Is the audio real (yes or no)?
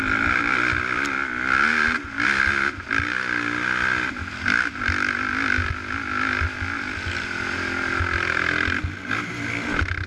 yes